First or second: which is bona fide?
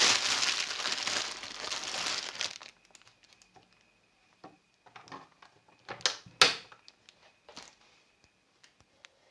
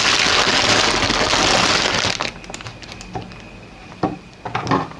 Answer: first